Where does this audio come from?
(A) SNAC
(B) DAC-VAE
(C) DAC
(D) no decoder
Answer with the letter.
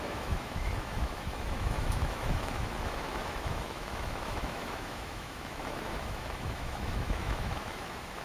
B